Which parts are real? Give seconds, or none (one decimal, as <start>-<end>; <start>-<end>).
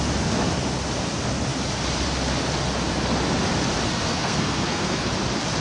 0.0-3.9; 5.1-5.6